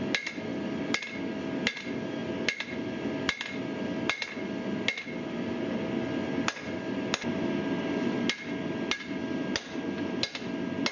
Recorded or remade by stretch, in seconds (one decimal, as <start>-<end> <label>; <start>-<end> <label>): 0.0-10.9 recorded